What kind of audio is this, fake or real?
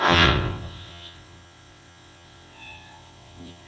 fake